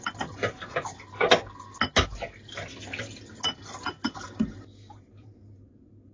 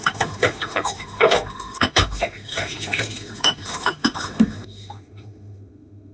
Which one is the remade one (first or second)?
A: second